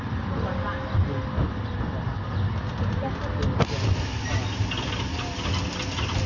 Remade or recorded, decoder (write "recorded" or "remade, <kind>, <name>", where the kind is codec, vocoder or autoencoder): recorded